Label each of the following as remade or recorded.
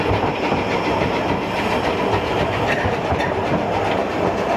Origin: recorded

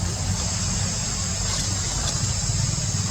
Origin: recorded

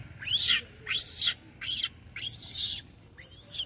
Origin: recorded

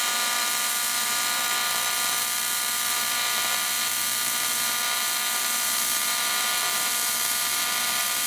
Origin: remade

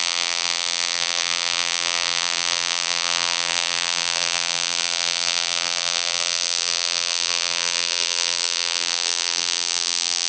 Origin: remade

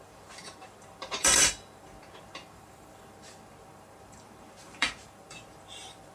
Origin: remade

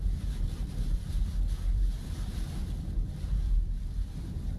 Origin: remade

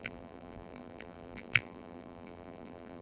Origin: remade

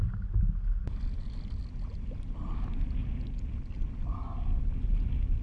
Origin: recorded